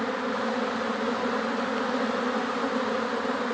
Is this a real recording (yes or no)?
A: yes